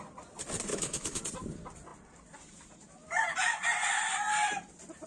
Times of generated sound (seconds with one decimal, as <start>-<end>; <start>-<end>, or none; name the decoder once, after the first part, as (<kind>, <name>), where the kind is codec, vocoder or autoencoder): 0.7-1.2 (autoencoder, DAC-VAE)